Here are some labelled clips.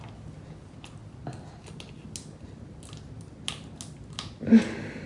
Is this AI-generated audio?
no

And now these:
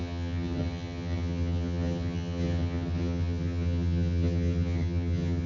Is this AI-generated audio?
yes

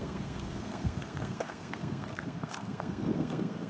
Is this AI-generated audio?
yes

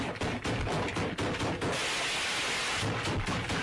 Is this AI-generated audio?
no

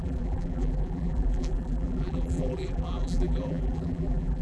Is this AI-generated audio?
yes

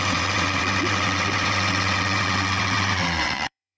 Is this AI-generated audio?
yes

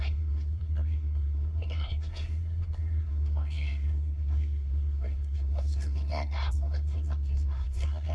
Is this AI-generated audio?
yes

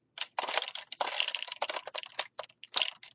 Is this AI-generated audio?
no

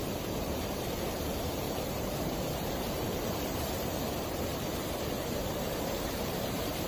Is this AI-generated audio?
yes